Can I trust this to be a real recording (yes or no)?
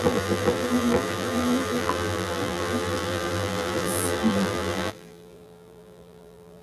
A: no